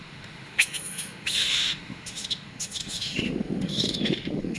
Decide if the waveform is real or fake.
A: fake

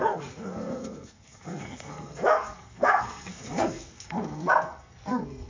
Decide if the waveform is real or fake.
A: fake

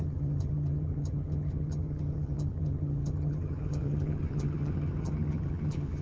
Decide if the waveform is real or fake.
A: fake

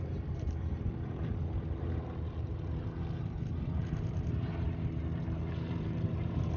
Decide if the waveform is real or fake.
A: fake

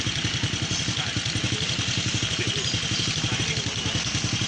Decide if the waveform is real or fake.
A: real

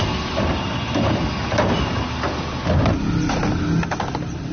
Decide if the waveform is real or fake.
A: real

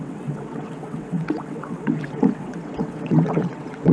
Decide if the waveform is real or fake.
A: fake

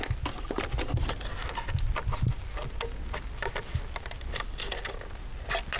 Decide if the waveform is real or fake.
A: real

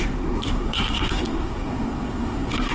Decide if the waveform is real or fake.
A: fake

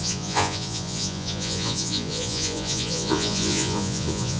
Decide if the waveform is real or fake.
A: fake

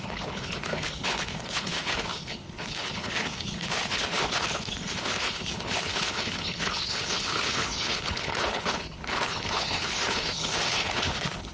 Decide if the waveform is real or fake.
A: fake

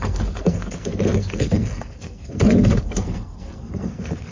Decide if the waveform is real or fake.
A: fake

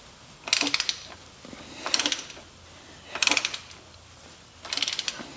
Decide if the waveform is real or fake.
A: real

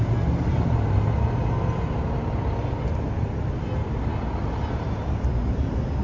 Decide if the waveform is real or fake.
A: real